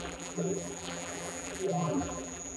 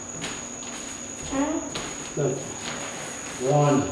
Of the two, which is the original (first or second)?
second